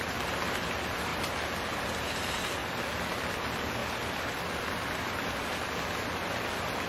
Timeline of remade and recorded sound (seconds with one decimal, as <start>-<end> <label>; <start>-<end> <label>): 0.0-1.1 remade; 1.1-2.1 recorded; 2.1-2.6 remade; 2.6-3.1 recorded; 3.1-3.8 remade; 3.8-6.9 recorded